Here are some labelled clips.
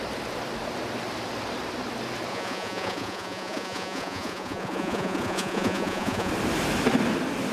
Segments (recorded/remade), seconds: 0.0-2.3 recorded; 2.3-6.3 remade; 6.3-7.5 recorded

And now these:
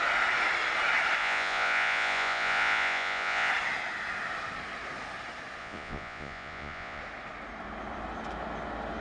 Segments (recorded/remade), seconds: 0.0-1.2 recorded; 1.2-3.5 remade; 3.5-5.6 recorded; 5.6-7.0 remade; 7.0-9.0 recorded

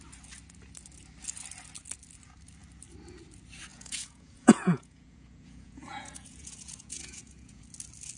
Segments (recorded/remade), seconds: 0.0-3.7 recorded; 3.7-7.6 remade; 7.6-8.2 recorded

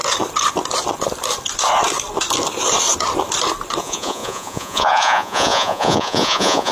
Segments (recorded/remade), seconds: 0.0-3.8 recorded; 3.8-6.7 remade

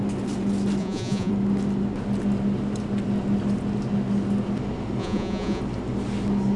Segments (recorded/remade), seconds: 0.0-0.8 recorded; 0.8-1.3 remade; 1.3-5.0 recorded; 5.0-5.6 remade; 5.6-6.6 recorded